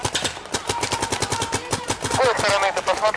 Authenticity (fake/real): real